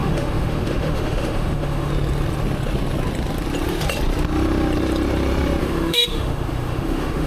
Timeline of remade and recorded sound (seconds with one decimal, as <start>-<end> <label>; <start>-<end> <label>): 0.0-1.9 remade; 1.9-5.6 recorded; 5.6-7.3 remade